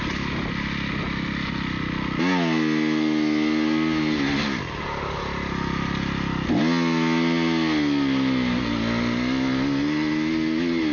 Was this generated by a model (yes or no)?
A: no